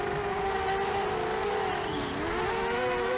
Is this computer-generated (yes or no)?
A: no